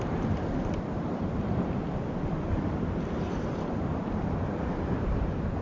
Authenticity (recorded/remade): recorded